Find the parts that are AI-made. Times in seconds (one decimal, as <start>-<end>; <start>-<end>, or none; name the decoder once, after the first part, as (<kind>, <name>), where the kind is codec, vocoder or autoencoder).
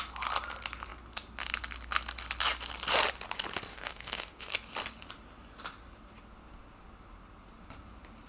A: 3.7-4.5 (autoencoder, DAC-VAE)